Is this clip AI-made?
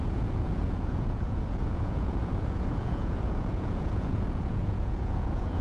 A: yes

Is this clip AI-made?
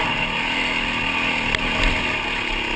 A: no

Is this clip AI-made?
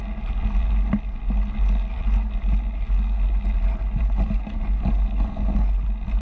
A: no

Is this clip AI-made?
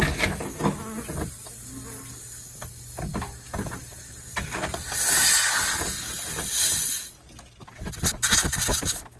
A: no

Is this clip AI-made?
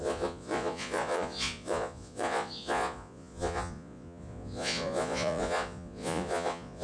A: yes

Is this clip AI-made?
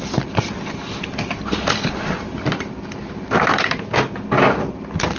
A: no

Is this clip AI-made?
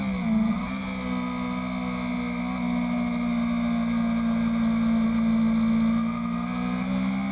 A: no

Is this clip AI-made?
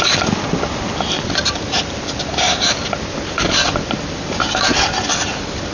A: no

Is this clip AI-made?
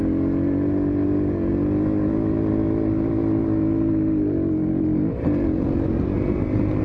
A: no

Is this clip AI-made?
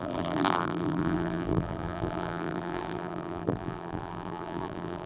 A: yes